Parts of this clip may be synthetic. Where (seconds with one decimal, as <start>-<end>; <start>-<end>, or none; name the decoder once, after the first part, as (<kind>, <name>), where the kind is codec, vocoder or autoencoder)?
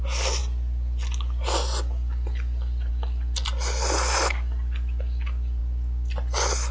none